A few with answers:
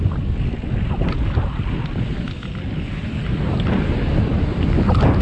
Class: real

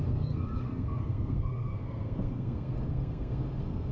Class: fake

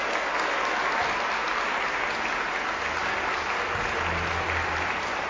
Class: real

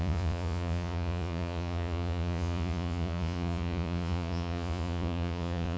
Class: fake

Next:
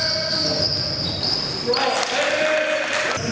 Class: real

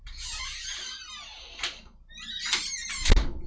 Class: real